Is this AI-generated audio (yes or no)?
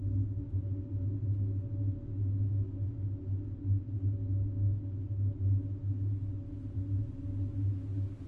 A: no